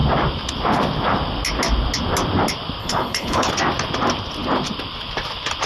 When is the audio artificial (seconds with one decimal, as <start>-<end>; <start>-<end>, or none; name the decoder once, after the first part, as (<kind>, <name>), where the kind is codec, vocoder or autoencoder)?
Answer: 2.8-3.5 (codec, HILCodec)